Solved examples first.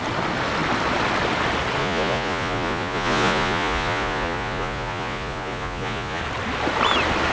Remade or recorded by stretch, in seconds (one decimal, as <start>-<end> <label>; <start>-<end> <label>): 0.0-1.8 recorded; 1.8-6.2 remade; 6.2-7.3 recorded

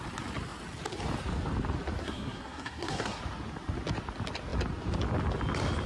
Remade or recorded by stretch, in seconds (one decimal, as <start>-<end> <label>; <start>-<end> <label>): 0.0-2.0 recorded; 2.0-3.2 remade; 3.2-5.9 recorded

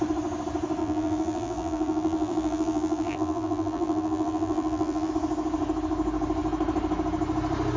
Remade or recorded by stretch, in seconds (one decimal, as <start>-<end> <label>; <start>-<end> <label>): 0.0-0.8 recorded; 0.8-5.1 remade; 5.1-7.8 recorded